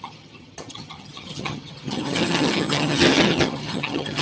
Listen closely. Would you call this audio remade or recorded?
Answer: remade